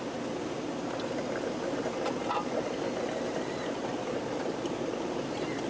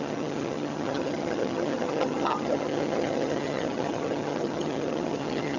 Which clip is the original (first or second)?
first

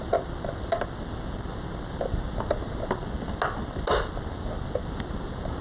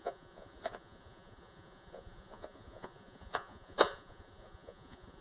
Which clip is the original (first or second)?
first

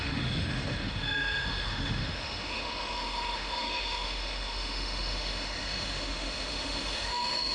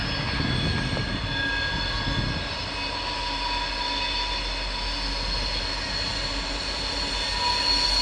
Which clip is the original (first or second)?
second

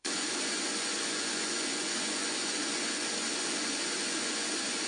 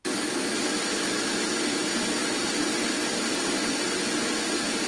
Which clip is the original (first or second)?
second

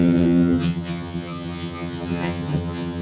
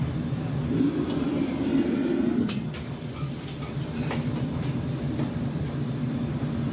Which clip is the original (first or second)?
second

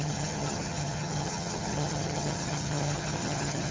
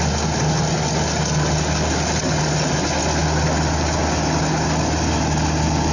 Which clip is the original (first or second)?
second